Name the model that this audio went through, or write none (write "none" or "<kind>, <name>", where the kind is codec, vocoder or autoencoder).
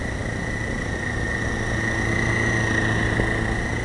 none